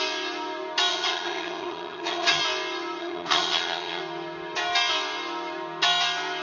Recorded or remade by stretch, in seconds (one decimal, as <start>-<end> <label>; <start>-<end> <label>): 0.0-0.9 recorded; 0.9-2.4 remade; 2.4-3.0 recorded; 3.0-4.0 remade; 4.0-6.4 recorded